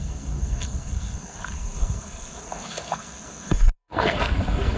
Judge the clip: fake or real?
fake